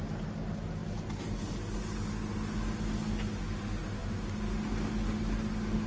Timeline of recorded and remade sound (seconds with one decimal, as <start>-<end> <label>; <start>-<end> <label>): 0.0-5.9 recorded

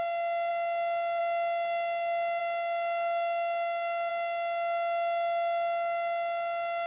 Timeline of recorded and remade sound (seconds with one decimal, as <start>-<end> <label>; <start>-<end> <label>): 0.0-2.4 recorded; 2.4-4.1 remade; 4.1-6.9 recorded

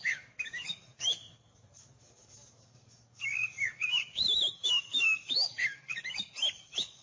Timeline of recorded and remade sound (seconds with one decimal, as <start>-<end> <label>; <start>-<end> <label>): 0.0-7.0 remade

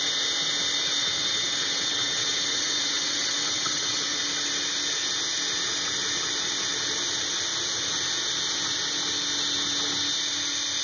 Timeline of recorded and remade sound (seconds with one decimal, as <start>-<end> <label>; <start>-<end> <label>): 0.0-1.0 recorded; 1.0-4.2 remade; 4.2-10.8 recorded

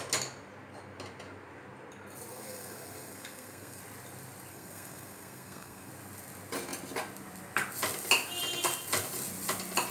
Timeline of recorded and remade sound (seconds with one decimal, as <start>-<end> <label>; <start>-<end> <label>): 0.0-2.3 recorded; 2.3-3.8 remade; 3.8-4.5 recorded; 4.5-5.9 remade; 5.9-9.9 recorded

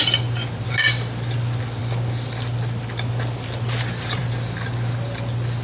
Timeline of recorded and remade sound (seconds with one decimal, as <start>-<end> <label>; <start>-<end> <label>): 0.0-5.6 recorded

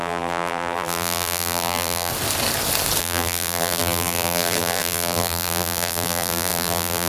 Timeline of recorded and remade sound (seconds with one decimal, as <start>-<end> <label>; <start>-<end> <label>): 0.0-2.1 remade; 2.1-3.0 recorded; 3.0-7.1 remade

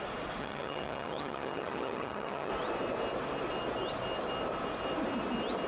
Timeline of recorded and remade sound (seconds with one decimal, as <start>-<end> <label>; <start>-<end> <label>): 0.0-0.4 recorded; 0.4-2.5 remade; 2.5-5.7 recorded